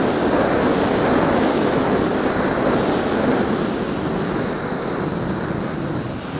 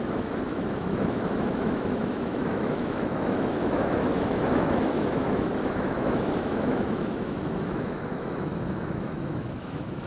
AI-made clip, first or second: second